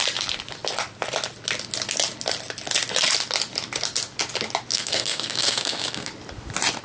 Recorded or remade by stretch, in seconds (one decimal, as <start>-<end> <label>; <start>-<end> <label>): 0.0-4.7 recorded; 4.7-6.1 remade; 6.1-6.8 recorded